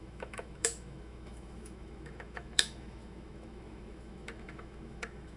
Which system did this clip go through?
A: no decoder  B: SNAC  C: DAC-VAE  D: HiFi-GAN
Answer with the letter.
C